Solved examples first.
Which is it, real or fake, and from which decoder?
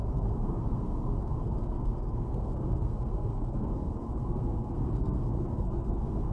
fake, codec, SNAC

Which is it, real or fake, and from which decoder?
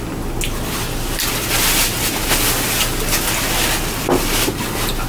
real